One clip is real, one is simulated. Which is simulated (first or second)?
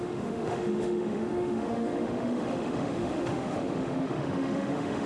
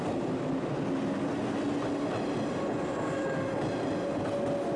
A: first